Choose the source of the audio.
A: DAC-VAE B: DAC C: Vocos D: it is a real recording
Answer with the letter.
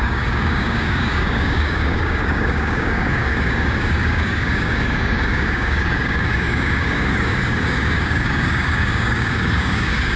B